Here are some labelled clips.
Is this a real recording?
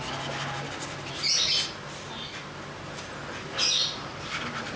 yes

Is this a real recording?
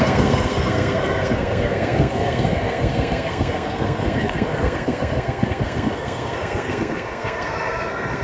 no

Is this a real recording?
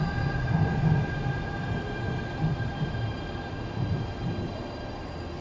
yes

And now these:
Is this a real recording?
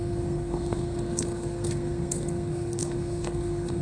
no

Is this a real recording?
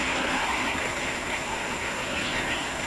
no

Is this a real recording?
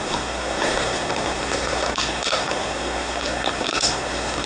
no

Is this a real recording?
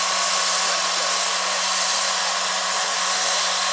yes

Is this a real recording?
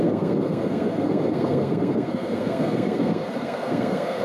no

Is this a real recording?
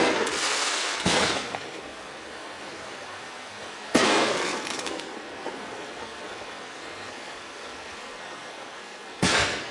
no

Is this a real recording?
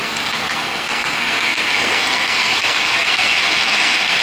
no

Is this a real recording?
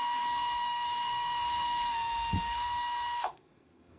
no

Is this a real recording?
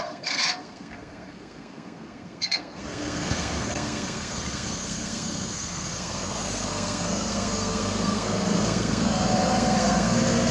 no